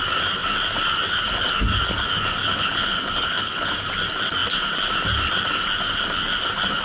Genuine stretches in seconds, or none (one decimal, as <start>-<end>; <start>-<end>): 0.0-2.4; 3.7-6.8